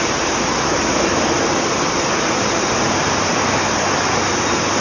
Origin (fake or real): real